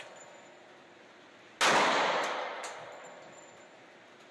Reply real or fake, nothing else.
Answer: real